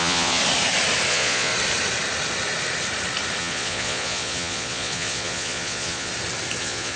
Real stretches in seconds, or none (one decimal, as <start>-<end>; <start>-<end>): 0.4-1.1; 1.5-3.4; 6.1-6.6